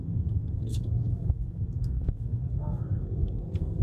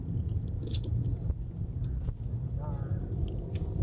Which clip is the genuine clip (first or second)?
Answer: second